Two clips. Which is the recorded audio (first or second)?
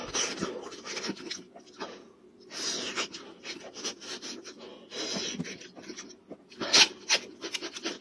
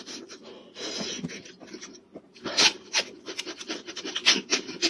first